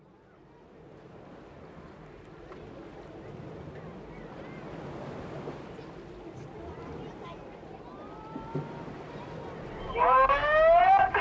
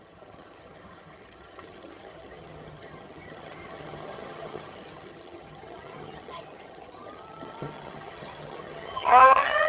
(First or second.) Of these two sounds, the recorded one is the first